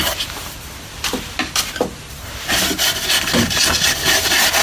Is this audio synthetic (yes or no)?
no